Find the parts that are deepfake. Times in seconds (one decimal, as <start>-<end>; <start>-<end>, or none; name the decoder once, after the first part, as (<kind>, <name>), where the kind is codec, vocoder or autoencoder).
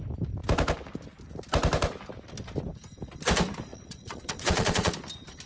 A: 3.7-4.9 (vocoder, Vocos)